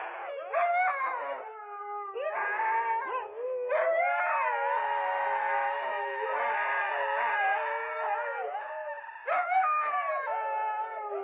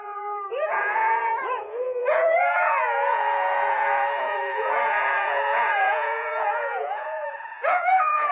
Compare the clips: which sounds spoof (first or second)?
second